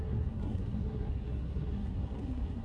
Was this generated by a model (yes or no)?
yes